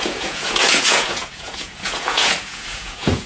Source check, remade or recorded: remade